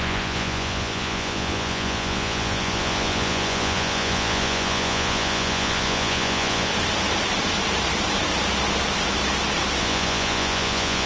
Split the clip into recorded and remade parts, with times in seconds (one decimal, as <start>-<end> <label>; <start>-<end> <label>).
0.0-6.7 remade; 6.7-9.8 recorded; 9.8-11.1 remade